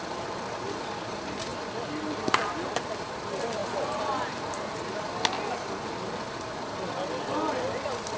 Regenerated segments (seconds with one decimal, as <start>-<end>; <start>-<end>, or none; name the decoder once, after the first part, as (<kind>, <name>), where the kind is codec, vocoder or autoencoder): 0.0-3.6 (vocoder, BigVGAN v2); 7.6-8.2